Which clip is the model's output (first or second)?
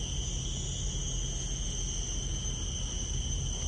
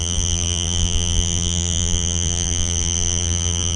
second